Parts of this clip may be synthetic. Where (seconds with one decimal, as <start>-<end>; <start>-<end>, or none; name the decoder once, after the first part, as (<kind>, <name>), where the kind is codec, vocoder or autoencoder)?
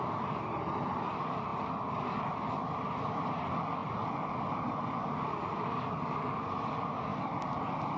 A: 7.1-8.0 (vocoder, BigVGAN v2)